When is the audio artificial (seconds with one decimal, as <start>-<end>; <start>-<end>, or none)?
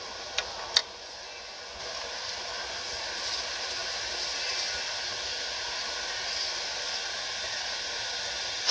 0.8-1.8